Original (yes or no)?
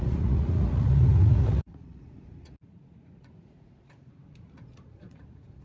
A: no